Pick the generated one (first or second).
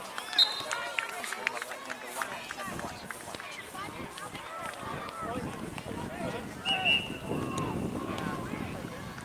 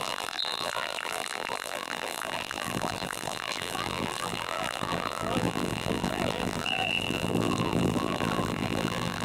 second